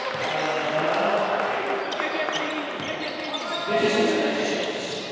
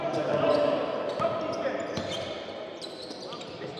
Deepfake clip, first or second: second